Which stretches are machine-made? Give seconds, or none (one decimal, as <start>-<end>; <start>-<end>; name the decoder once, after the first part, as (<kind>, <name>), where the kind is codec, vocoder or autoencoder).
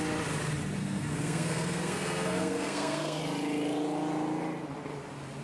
0.8-3.2 (codec, SNAC)